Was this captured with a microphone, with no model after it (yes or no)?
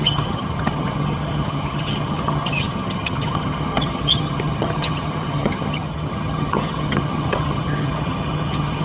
no